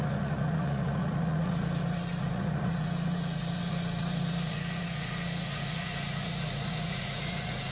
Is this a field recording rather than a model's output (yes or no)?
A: no